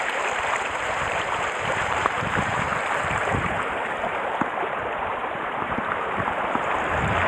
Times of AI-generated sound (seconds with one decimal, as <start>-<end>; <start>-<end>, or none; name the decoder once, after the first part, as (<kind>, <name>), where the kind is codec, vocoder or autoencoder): 0.0-2.7 (vocoder, BigVGAN v2); 3.3-7.3